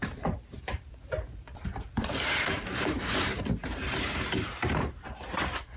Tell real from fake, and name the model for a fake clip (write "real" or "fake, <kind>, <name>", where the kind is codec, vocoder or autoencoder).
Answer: fake, vocoder, BigVGAN v2